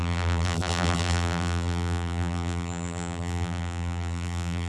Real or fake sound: fake